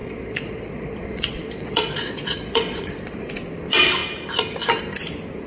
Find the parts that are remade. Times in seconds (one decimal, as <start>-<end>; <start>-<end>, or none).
0.0-3.3